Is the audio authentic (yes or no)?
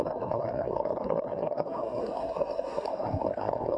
no